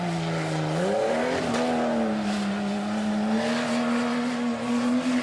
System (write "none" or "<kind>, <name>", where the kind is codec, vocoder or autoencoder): none